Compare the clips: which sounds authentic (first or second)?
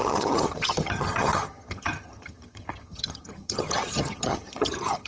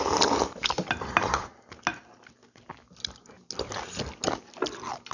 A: second